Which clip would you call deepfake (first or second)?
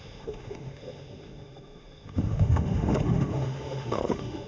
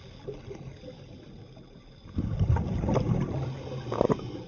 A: first